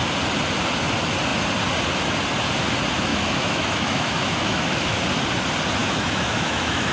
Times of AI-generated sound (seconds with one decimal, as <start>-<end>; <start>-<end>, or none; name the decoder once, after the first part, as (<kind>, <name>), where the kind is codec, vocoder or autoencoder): 3.1-5.0 (autoencoder, DAC-VAE); 5.8-6.9